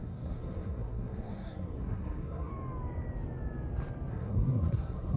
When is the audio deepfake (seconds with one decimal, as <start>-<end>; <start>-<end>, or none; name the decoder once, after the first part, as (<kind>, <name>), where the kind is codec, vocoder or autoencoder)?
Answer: 0.0-2.5 (codec, SNAC); 4.1-5.2